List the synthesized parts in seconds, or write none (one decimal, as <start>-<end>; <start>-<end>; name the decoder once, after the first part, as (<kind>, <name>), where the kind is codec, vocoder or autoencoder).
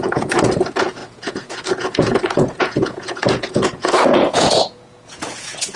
0.0-5.8 (vocoder, Vocos)